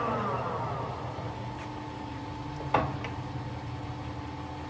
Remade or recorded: recorded